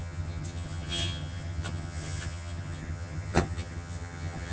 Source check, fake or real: fake